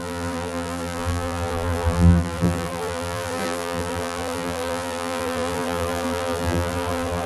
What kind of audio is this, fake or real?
fake